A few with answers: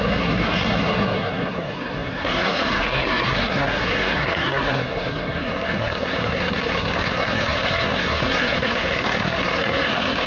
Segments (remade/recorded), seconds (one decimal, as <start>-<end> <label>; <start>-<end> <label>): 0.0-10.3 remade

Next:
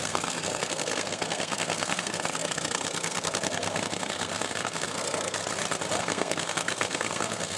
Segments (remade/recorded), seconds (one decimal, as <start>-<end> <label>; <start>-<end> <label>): 0.0-5.4 remade; 5.4-6.0 recorded; 6.0-7.6 remade

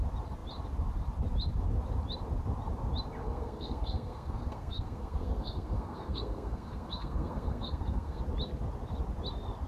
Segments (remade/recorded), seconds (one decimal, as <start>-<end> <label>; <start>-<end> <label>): 0.0-3.2 recorded; 3.2-8.2 remade; 8.2-9.7 recorded